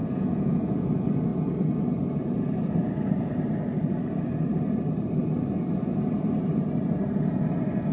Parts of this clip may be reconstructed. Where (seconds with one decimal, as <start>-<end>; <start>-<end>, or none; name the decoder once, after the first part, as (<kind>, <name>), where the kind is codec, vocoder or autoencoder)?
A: 0.0-0.9 (vocoder, Vocos)